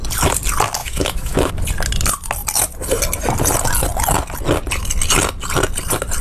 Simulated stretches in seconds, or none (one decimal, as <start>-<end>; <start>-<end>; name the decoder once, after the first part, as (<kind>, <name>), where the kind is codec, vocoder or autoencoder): 0.8-1.5 (autoencoder, DAC-VAE)